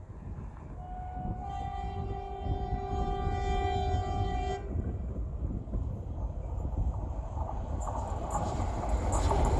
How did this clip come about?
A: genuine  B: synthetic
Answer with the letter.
A